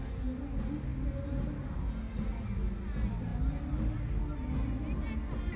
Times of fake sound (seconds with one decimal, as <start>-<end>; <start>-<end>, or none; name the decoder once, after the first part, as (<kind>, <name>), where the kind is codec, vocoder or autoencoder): none